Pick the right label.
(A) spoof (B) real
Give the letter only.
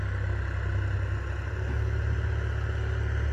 B